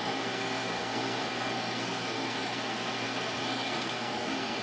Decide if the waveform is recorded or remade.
remade